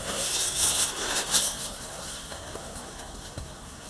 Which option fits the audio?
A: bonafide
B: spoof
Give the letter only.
B